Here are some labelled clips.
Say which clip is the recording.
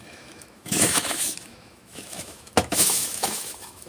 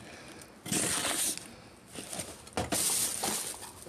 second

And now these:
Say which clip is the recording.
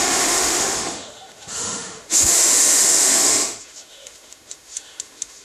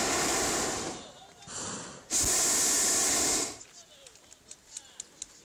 second